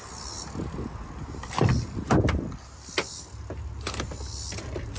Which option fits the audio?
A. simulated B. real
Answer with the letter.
B